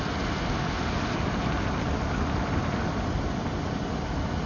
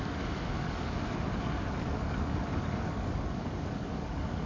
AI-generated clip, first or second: second